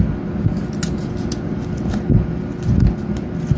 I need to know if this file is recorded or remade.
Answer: recorded